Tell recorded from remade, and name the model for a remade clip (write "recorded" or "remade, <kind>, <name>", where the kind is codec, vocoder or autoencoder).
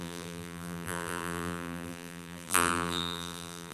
remade, vocoder, BigVGAN v2